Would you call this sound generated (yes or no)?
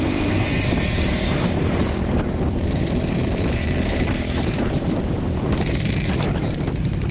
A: yes